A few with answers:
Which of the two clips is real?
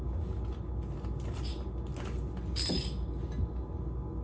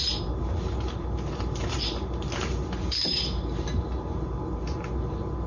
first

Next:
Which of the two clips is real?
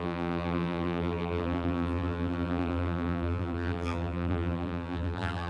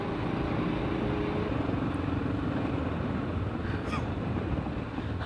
second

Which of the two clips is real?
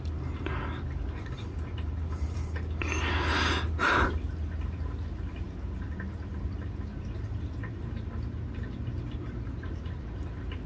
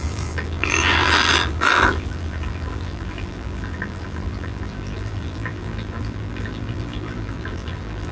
first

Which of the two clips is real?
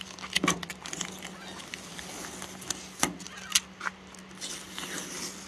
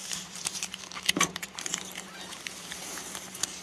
first